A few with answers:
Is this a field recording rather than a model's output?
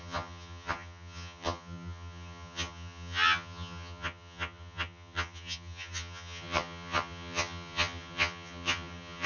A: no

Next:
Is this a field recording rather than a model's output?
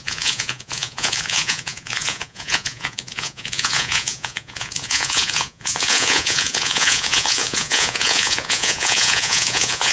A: no